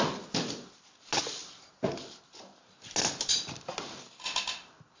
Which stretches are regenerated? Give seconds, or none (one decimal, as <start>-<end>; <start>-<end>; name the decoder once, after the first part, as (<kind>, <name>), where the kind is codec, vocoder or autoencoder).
none